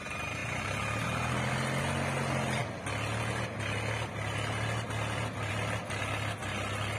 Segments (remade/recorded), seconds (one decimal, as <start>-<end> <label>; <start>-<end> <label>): 0.0-7.0 recorded